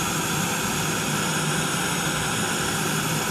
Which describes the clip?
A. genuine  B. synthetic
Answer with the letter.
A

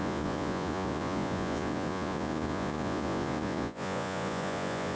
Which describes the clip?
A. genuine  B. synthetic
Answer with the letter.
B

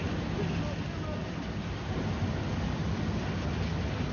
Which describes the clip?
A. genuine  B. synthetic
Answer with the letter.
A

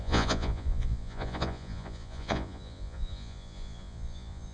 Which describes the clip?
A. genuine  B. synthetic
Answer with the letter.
B